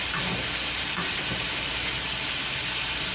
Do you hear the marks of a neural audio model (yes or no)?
yes